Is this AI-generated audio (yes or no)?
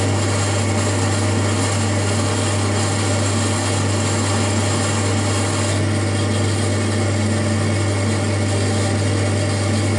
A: no